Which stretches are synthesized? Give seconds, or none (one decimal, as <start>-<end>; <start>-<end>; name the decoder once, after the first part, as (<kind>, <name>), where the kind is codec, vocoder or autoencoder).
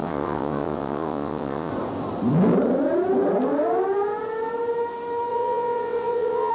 0.0-1.7 (vocoder, WaveNeXt); 5.3-6.5